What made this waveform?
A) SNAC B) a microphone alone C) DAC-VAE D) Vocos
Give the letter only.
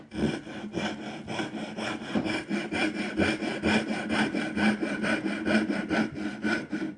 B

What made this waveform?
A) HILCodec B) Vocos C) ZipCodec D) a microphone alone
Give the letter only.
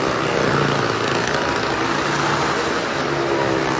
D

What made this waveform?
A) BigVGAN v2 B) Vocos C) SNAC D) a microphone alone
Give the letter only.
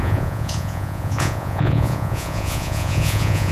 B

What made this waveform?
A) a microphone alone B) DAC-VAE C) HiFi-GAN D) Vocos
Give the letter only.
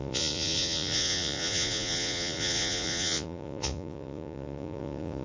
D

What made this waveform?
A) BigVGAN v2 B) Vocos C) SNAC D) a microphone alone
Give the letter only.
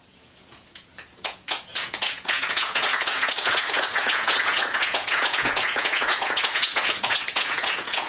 B